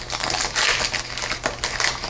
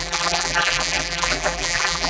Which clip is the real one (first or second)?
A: first